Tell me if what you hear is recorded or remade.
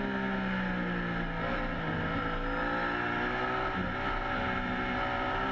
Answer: recorded